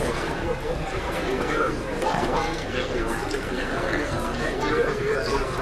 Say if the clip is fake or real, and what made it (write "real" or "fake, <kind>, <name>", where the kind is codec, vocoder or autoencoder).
fake, codec, SNAC